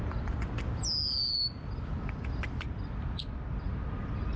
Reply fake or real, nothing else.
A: real